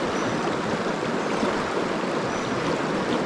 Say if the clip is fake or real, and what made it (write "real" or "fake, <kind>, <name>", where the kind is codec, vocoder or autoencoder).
real